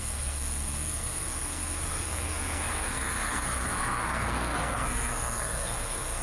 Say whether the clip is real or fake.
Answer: fake